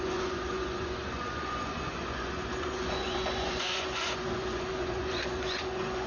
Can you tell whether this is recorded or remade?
remade